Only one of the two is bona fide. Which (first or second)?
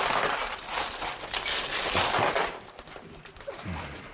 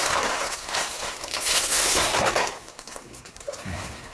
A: first